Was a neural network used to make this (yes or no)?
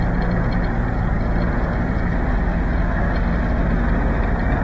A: no